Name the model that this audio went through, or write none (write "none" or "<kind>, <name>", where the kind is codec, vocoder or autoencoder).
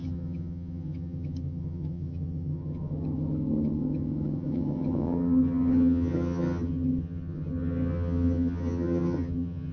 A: vocoder, HiFi-GAN